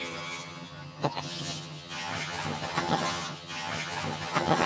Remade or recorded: remade